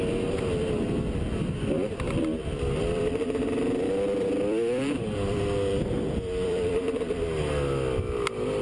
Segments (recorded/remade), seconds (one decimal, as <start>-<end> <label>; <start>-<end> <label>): 0.0-2.5 recorded; 2.5-7.4 remade; 7.4-8.6 recorded